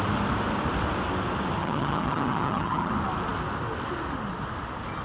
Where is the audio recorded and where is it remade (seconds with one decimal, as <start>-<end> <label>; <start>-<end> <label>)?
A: 0.0-1.6 recorded; 1.6-2.9 remade; 2.9-5.0 recorded